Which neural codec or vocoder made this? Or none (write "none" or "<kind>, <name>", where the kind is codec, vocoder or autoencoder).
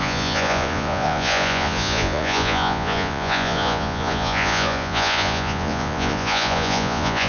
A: vocoder, Vocos